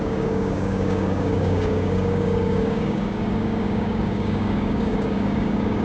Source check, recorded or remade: remade